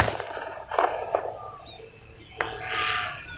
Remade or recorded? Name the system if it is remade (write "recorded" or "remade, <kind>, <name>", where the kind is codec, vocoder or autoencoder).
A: recorded